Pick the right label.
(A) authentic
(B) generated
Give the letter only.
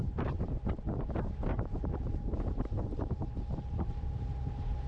B